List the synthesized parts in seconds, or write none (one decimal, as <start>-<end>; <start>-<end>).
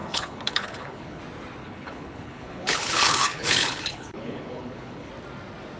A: 0.0-1.2; 1.6-5.1